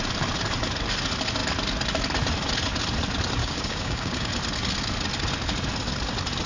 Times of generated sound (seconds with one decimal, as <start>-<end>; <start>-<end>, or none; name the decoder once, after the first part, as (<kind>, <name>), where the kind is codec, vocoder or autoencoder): 3.4-4.3 (codec, DAC)